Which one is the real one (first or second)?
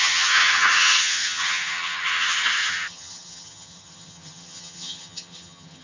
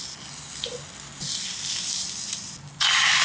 second